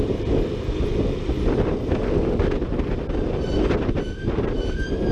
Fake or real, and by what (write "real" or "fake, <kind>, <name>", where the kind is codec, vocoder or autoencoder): real